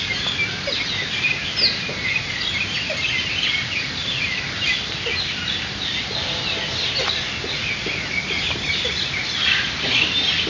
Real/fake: real